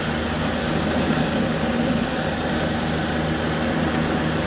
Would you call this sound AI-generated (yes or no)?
no